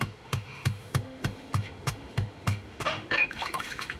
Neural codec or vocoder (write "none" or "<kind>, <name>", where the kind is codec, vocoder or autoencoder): autoencoder, DAC-VAE